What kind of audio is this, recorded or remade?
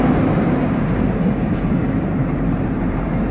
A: remade